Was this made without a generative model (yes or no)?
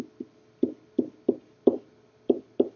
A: yes